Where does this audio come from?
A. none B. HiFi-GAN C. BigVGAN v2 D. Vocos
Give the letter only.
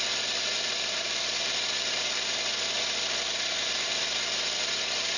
C